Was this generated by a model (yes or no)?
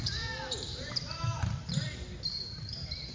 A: yes